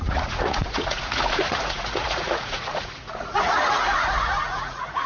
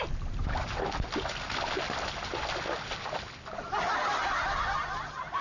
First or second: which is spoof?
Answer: first